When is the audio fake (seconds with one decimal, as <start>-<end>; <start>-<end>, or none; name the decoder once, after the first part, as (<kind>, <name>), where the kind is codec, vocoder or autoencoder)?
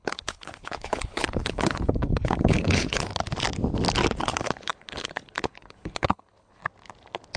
0.0-3.1 (codec, HILCodec); 4.2-6.6